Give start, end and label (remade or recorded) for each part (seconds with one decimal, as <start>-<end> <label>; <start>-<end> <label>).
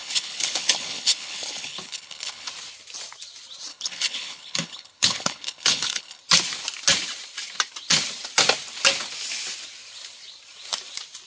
0.0-2.5 remade; 2.5-3.7 recorded; 3.7-6.2 remade; 6.2-11.3 recorded